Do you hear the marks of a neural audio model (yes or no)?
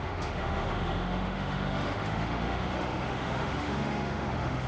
yes